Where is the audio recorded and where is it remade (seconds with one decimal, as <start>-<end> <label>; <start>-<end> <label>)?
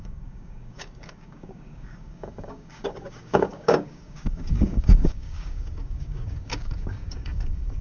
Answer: 0.0-7.8 remade